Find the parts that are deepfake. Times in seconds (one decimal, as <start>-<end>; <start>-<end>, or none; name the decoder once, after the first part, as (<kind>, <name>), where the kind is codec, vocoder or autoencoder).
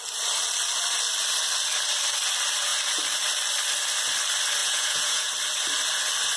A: 4.6-5.3 (vocoder, Vocos)